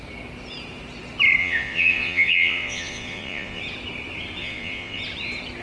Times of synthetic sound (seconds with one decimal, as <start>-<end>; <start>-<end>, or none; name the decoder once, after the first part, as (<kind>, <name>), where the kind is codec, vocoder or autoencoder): 1.4-3.6 (vocoder, Vocos); 4.4-5.0